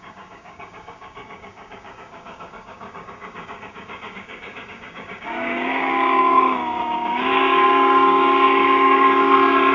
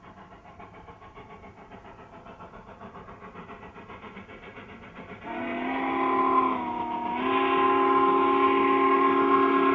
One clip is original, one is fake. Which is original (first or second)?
second